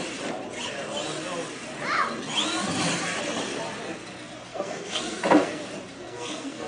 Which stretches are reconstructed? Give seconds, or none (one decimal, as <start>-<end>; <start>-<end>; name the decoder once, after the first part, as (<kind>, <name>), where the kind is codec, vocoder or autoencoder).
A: 4.5-5.6 (codec, SNAC); 6.0-6.7